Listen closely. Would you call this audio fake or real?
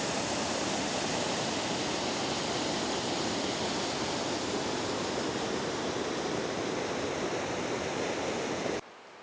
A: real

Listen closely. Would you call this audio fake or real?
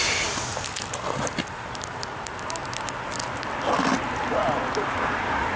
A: real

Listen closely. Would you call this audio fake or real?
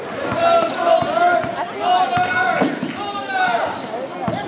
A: real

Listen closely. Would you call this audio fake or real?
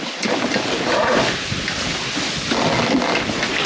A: real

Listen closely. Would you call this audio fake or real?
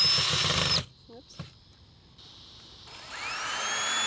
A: real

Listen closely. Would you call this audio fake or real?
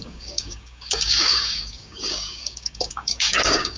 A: fake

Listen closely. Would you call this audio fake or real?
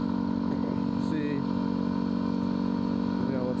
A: real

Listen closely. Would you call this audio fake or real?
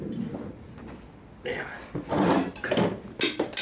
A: real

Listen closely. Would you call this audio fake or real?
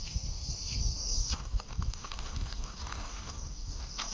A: fake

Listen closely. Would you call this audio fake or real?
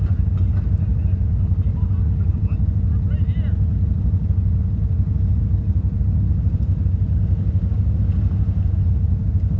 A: real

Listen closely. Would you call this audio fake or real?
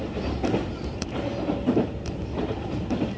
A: real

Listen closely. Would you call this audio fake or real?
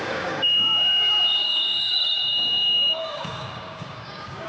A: fake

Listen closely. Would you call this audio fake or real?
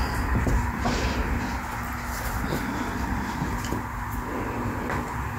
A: real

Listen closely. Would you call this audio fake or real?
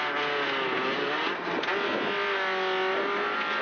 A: real